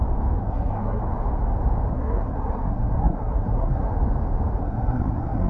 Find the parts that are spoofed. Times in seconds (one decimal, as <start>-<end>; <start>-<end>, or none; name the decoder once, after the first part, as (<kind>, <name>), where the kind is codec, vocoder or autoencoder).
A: 0.4-1.0 (codec, SNAC); 1.9-3.9; 4.6-5.5